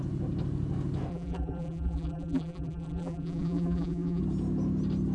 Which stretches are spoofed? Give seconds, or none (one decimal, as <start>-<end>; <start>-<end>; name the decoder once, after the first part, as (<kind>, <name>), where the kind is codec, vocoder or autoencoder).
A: 1.1-4.2 (vocoder, BigVGAN v2)